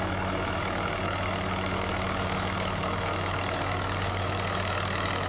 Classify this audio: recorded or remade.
remade